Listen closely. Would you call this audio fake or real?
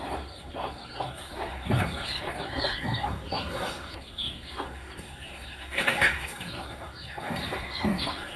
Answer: fake